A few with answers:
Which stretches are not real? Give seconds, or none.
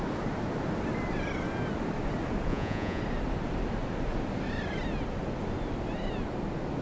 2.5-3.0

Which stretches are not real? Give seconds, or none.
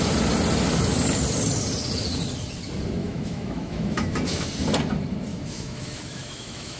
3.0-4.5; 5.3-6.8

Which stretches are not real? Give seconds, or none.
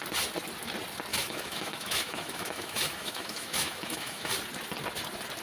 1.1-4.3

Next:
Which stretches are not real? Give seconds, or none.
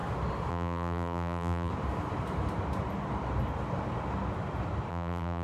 0.5-1.7; 4.9-5.4